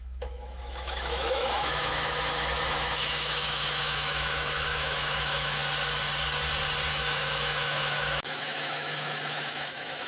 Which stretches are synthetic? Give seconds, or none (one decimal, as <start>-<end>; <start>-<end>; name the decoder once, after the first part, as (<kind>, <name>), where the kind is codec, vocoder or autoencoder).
0.0-5.6 (autoencoder, DAC-VAE); 6.9-10.1